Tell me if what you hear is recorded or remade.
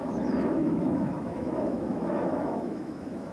remade